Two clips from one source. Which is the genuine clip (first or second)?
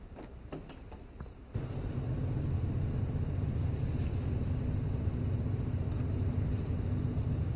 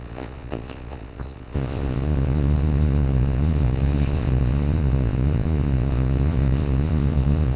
first